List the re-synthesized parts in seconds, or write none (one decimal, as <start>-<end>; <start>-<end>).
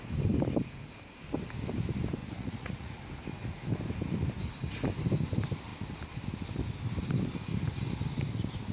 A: 2.2-3.0